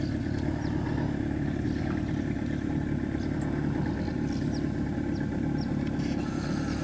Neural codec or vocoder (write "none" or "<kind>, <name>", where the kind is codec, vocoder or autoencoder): none